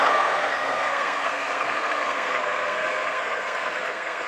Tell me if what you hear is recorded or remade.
remade